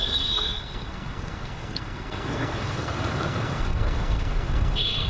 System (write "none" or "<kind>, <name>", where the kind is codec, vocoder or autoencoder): codec, SNAC